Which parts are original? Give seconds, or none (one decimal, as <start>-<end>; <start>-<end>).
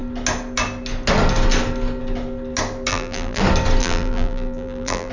0.0-2.9; 3.4-3.8